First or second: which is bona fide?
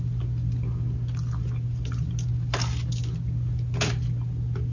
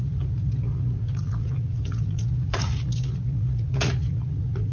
first